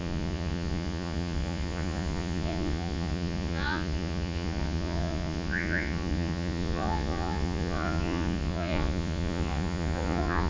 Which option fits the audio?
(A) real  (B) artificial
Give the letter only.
B